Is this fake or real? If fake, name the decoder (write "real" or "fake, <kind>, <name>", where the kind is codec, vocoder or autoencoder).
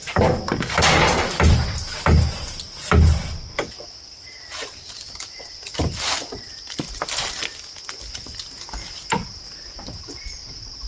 real